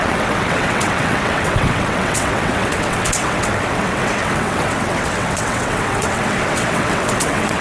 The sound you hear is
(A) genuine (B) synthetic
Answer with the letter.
B